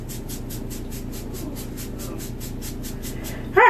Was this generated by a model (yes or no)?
no